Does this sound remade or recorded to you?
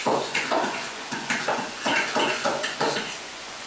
remade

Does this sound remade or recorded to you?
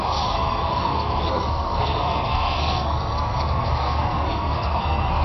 remade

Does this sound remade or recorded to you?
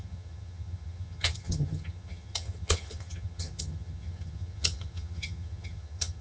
remade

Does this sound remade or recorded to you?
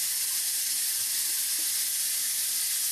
recorded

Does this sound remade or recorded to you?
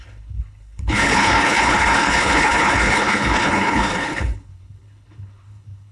remade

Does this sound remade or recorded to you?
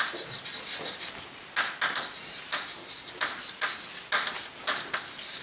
recorded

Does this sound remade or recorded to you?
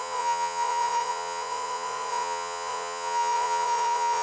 remade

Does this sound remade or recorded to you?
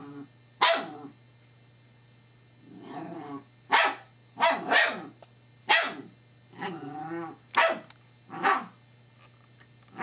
recorded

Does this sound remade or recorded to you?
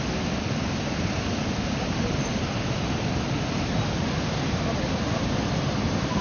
recorded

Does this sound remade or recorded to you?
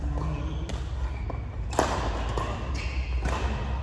recorded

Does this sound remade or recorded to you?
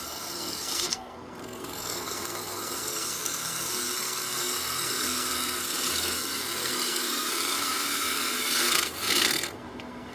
remade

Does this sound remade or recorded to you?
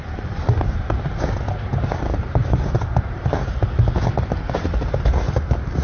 recorded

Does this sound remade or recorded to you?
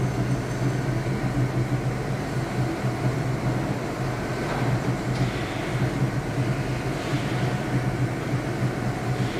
recorded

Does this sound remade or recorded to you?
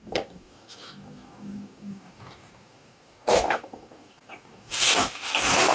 remade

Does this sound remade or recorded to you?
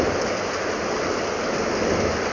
recorded